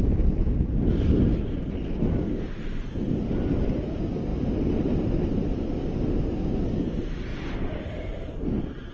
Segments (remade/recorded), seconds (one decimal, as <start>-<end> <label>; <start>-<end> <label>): 0.0-4.3 recorded; 4.3-6.2 remade; 6.2-7.3 recorded; 7.3-8.1 remade; 8.1-8.9 recorded